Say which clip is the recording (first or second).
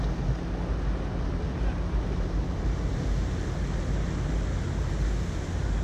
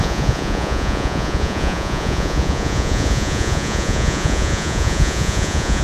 first